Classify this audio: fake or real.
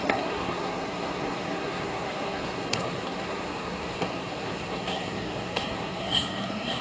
fake